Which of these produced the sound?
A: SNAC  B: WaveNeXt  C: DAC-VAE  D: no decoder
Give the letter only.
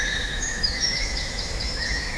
C